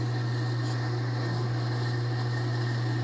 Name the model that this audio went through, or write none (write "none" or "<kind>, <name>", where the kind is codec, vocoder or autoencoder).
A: none